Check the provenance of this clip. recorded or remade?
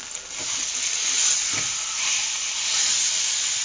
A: recorded